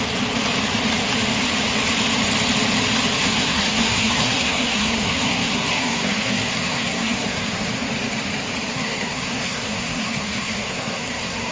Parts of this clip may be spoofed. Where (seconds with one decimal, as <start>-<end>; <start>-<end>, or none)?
3.2-7.7; 8.7-11.5